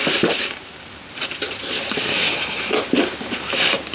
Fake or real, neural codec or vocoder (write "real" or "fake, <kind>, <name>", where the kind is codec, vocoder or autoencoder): real